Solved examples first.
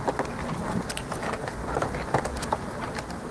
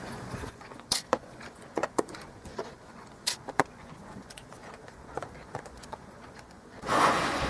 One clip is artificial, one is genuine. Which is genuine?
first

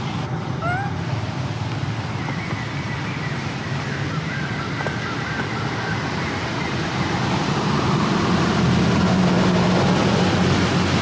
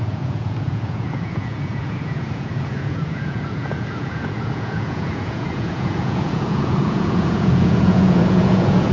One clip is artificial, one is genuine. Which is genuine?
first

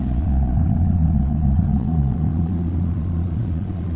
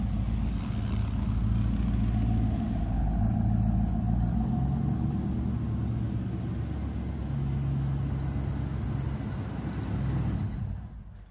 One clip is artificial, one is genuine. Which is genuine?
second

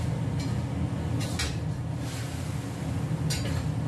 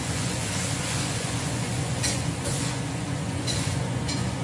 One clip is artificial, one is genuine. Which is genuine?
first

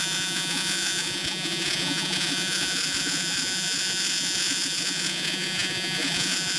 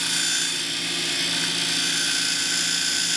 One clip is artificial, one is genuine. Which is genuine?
second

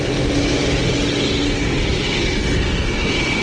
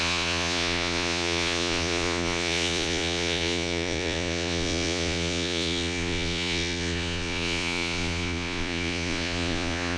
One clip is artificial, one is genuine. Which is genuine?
first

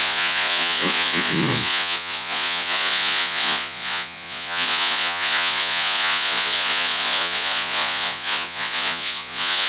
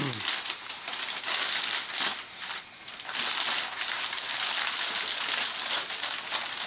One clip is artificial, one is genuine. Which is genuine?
second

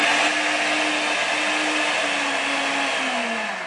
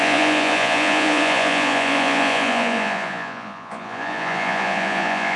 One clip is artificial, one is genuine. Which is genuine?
first